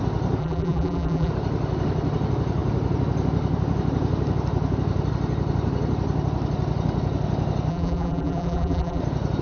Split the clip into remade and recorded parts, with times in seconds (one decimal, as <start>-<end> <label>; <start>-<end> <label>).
0.0-0.4 recorded; 0.4-1.3 remade; 1.3-7.7 recorded; 7.7-9.0 remade; 9.0-9.4 recorded